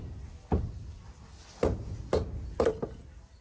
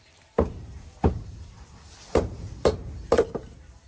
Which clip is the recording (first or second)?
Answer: first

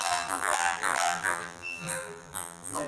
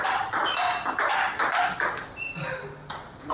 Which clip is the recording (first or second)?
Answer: second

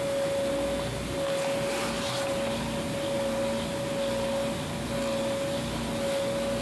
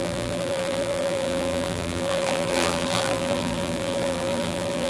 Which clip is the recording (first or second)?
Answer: first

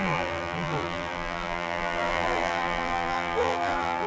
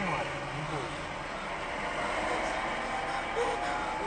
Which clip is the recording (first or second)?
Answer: second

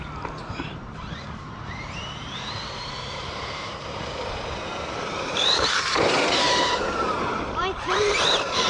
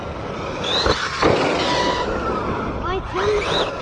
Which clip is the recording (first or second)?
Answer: second